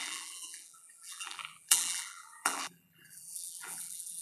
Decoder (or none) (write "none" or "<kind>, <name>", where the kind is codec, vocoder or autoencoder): vocoder, BigVGAN v2